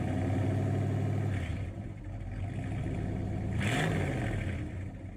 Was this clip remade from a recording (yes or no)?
no